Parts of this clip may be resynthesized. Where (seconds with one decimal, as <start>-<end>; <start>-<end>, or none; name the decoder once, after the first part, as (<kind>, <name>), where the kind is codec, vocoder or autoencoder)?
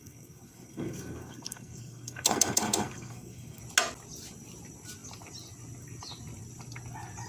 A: 0.0-3.6 (codec, SNAC)